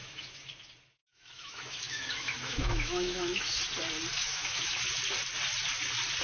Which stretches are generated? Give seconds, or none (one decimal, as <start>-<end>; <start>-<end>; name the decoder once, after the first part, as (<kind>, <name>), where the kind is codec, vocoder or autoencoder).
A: 0.0-0.5 (autoencoder, DAC-VAE); 1.0-3.6; 4.2-4.8